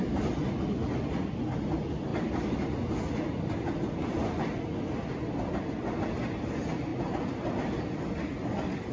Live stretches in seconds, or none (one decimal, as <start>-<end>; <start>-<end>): 0.0-8.9